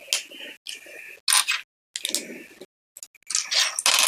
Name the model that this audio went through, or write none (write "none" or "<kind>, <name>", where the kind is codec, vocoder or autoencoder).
none